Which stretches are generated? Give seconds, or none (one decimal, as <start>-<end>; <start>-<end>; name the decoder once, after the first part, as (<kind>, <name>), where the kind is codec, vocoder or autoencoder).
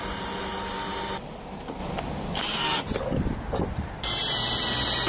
none